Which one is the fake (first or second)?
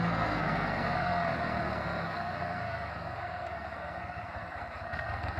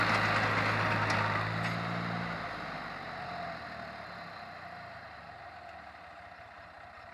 first